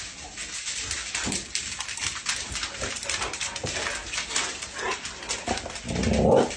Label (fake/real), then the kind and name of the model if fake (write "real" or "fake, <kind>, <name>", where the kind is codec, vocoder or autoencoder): real